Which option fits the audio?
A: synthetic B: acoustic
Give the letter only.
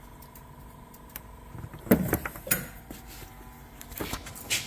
B